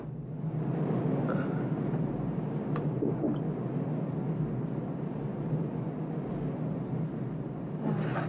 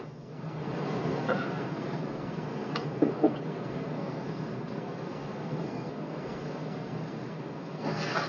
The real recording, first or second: first